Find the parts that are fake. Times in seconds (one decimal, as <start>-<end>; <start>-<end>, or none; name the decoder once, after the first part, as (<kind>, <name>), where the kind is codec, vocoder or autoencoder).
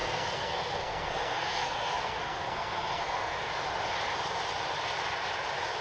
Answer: 0.0-3.5 (codec, SNAC)